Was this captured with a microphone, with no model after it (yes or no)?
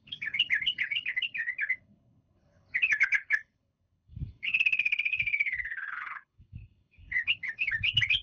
no